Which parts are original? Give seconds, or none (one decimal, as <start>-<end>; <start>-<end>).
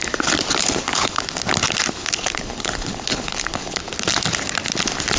0.0-0.6; 1.2-2.0; 3.8-5.2